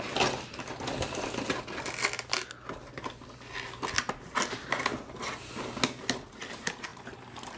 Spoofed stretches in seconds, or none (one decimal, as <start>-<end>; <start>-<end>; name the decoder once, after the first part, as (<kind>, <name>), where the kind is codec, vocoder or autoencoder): none